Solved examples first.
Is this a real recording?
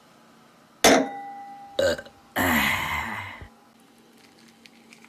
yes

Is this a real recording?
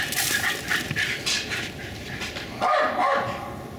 yes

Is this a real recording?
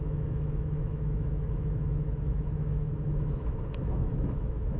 no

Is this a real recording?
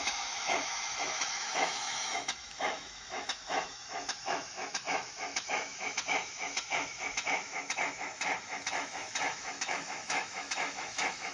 no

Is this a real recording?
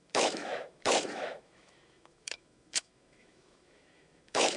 no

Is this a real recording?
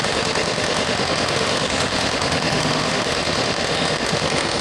no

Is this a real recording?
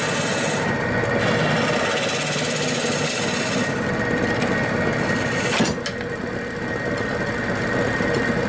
yes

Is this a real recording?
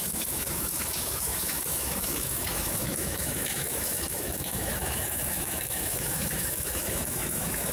no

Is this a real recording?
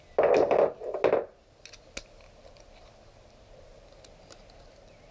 yes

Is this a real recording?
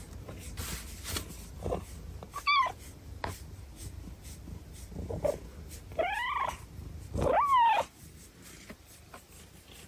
yes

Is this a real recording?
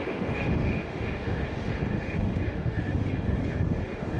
no